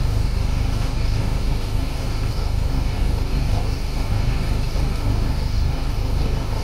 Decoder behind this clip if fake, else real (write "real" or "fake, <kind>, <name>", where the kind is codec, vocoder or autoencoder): fake, codec, DAC